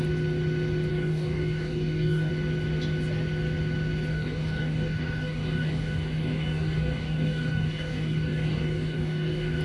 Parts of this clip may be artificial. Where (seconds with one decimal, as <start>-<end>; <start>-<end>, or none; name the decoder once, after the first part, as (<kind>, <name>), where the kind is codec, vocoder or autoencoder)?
0.9-2.3 (codec, DAC); 4.1-9.6